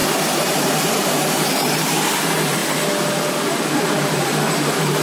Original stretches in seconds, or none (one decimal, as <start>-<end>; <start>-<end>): 0.0-0.5; 2.6-3.8